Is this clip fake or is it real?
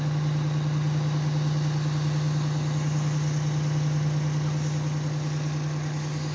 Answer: real